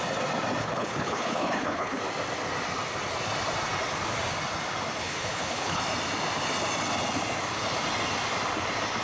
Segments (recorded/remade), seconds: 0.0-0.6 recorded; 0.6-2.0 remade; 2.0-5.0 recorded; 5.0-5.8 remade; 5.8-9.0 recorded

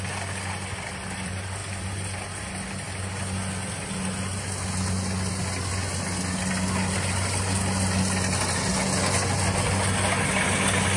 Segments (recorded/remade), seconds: 0.0-11.0 recorded

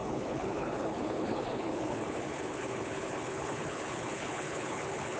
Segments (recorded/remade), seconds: 0.0-5.2 remade

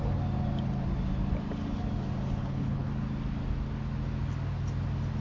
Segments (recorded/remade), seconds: 0.0-2.4 recorded; 2.4-2.9 remade; 2.9-5.2 recorded

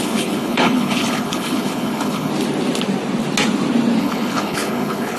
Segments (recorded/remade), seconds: 0.0-2.3 remade; 2.3-4.0 recorded; 4.0-5.2 remade